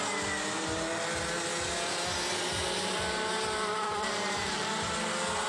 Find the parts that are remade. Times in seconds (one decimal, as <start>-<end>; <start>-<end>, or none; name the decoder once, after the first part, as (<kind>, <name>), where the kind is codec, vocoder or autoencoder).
2.6-4.7 (vocoder, BigVGAN v2)